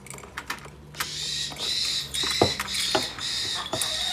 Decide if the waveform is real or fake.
real